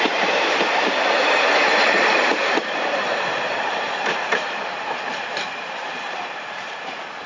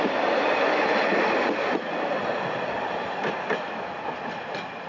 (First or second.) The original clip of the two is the second